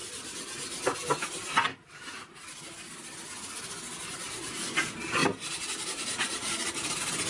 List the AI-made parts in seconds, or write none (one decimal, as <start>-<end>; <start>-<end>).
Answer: none